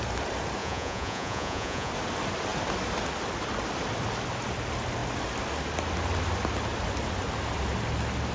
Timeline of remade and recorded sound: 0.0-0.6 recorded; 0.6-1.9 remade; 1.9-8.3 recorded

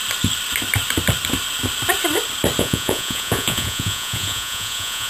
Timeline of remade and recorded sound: 0.0-2.6 recorded; 2.6-5.1 remade

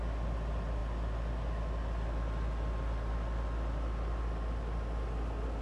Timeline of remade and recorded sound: 0.0-5.6 recorded